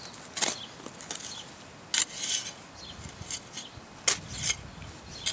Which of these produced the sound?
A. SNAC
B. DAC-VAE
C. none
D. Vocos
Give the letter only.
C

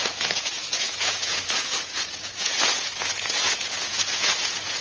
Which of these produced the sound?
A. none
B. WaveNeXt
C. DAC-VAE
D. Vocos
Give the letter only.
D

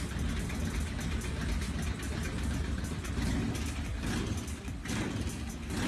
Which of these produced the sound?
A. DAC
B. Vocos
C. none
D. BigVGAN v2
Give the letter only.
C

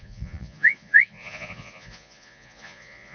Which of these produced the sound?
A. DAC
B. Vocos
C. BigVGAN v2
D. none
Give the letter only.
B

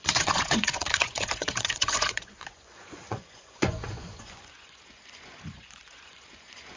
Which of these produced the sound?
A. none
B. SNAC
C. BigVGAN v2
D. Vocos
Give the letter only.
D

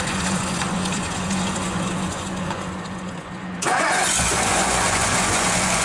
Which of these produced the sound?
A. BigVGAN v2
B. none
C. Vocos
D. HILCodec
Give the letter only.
C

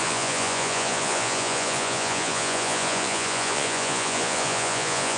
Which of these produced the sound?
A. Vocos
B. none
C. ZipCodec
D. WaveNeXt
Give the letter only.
A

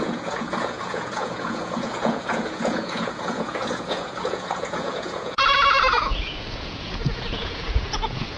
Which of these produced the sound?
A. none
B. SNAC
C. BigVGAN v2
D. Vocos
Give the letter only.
D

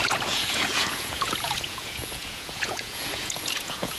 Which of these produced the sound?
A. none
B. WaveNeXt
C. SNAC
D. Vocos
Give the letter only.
D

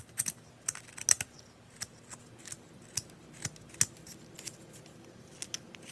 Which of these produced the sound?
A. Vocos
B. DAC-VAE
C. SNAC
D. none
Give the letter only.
D